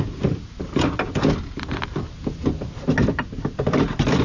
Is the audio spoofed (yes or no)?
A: no